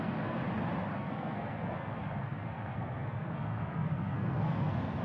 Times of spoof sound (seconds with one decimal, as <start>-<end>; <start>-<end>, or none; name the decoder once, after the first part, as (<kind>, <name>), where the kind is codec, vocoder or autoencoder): 0.0-0.4 (codec, SNAC); 0.9-5.0